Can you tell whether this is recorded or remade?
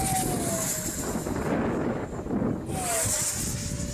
recorded